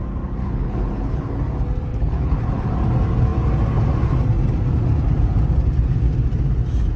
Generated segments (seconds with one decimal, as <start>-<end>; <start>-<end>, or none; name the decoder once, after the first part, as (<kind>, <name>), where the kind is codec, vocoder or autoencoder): 0.4-1.4 (codec, HILCodec); 1.9-2.7